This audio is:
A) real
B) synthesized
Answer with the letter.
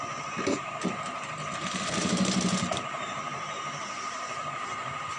B